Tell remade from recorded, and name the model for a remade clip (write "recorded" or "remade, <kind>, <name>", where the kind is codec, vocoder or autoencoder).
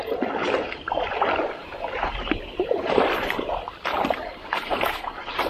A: remade, vocoder, BigVGAN v2